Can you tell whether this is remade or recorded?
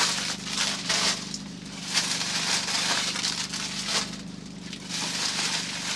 recorded